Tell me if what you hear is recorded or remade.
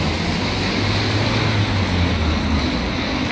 recorded